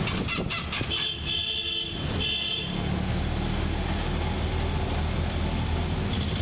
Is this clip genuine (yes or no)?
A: yes